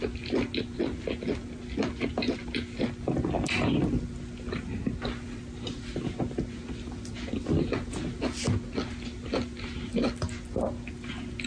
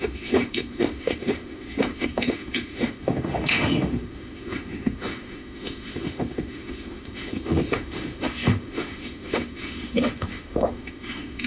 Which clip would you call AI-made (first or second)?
second